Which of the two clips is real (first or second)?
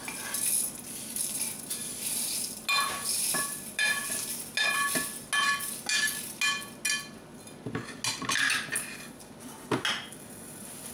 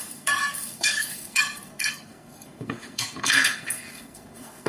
first